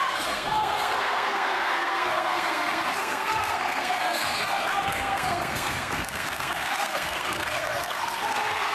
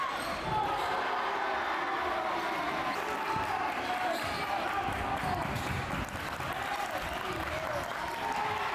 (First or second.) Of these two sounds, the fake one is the first